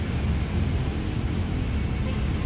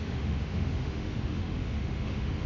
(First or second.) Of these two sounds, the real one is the first